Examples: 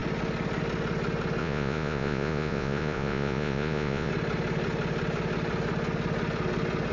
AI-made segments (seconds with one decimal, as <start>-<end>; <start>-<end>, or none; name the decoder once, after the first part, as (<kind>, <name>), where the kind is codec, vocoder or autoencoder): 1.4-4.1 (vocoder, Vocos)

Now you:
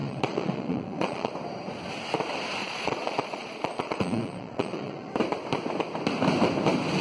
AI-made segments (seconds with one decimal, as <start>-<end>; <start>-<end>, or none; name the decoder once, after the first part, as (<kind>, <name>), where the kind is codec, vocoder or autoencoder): 0.0-1.3 (vocoder, Vocos); 2.6-5.1

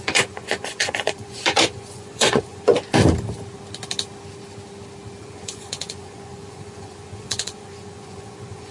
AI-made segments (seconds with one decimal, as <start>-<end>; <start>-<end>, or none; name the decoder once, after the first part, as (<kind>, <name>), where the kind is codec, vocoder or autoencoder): 0.0-2.7 (vocoder, Vocos); 5.2-8.7

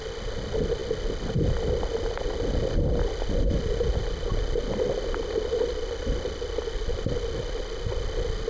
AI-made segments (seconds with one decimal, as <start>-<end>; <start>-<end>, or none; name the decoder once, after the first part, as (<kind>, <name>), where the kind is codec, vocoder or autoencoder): none

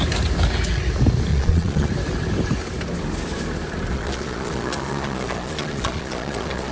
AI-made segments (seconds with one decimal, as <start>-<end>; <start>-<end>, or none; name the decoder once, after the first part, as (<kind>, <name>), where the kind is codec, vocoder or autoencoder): 1.3-1.9 (vocoder, Vocos); 3.9-6.7

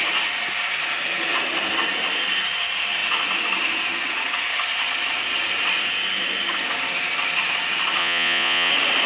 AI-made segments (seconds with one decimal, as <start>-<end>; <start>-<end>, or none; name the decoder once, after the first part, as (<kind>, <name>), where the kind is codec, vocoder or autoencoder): 8.0-8.7 (vocoder, Vocos)

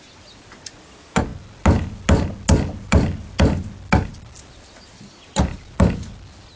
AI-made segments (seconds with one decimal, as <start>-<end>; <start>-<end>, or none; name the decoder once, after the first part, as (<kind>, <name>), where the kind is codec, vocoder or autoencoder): none

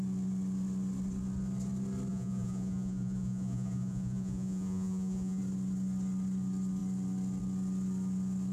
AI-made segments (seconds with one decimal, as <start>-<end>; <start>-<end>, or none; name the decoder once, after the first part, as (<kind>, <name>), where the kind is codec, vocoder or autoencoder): 2.1-5.4 (vocoder, Vocos)